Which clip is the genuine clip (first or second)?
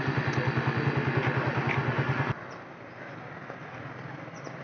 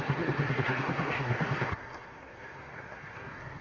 first